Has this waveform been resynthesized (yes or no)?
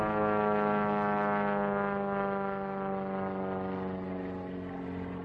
no